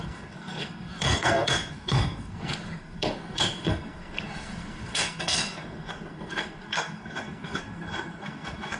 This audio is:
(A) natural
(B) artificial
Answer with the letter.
B